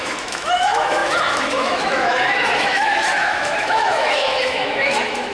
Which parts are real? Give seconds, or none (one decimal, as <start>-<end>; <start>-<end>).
none